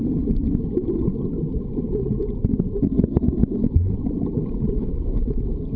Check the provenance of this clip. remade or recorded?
recorded